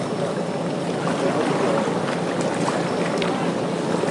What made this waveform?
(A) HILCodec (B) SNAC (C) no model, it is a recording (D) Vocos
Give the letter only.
C